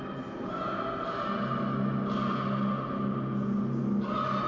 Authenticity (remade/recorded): recorded